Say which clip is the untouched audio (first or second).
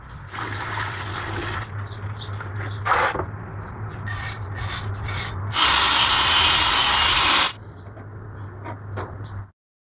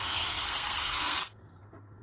first